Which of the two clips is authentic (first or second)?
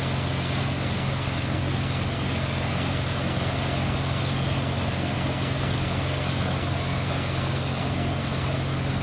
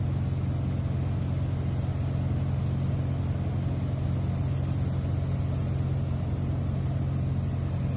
second